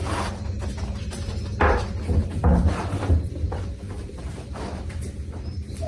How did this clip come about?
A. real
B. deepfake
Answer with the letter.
A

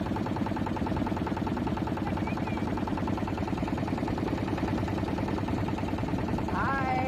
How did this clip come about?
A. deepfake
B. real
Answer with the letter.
B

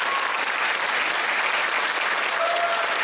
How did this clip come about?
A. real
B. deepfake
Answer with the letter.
A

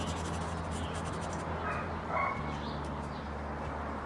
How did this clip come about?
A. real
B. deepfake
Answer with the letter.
A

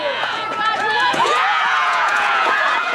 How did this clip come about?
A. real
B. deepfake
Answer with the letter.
B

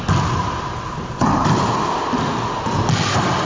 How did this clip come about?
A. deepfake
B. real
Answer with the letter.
B